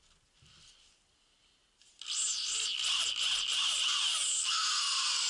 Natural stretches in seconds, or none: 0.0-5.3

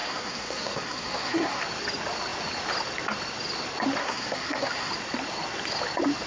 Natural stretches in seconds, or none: 1.6-4.0; 4.9-6.3

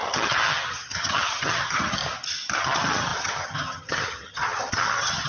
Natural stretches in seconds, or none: 2.0-2.6

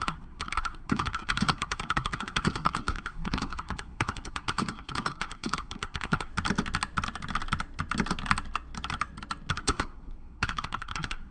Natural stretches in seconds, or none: 6.3-9.5

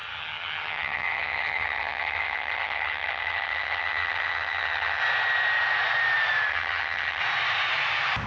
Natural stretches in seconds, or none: 5.0-6.5; 7.2-8.3

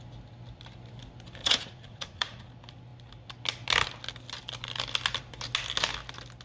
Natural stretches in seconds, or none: 0.0-1.4; 2.5-6.4

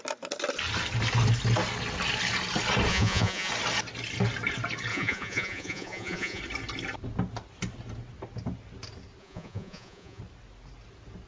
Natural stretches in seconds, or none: 0.0-2.9; 3.5-4.9; 6.4-9.2; 10.2-11.3

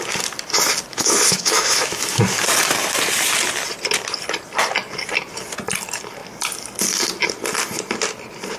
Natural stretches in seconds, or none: 0.0-0.9; 2.2-8.6